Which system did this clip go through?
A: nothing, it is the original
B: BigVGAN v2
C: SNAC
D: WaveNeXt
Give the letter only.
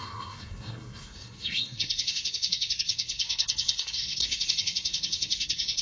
C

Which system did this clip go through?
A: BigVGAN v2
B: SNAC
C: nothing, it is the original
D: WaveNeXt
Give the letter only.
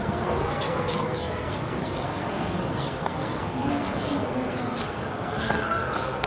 B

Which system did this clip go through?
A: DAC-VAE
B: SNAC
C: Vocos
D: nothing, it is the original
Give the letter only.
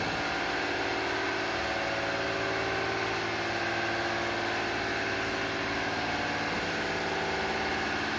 D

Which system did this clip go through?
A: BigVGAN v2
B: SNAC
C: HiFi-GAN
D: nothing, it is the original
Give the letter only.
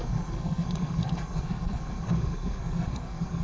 B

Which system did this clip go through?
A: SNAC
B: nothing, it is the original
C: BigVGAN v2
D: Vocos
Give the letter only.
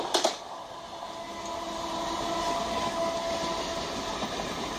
B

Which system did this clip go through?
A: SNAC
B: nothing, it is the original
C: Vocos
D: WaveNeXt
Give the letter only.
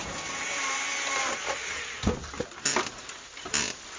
B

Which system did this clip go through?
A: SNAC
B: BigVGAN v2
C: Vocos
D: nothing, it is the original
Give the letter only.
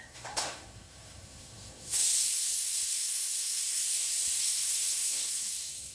A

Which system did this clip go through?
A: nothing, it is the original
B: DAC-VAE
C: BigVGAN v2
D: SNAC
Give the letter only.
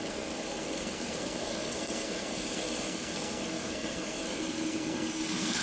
D